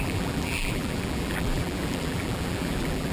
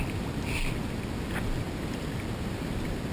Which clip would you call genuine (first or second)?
second